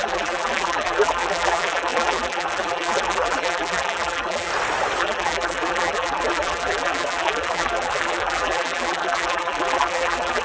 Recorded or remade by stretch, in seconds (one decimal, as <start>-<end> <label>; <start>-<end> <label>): 0.0-4.5 remade; 4.5-5.0 recorded; 5.0-10.4 remade